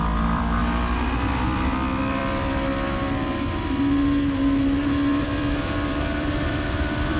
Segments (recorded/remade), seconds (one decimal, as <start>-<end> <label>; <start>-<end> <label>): 0.0-0.6 remade; 0.6-1.3 recorded; 1.3-2.2 remade; 2.2-5.2 recorded; 5.2-7.2 remade